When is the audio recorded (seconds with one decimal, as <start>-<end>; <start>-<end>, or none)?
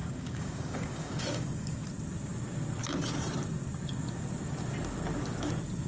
1.8-5.9